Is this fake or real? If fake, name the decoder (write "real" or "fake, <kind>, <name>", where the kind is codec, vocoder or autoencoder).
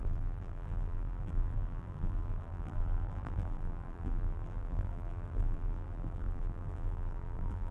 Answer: fake, vocoder, BigVGAN v2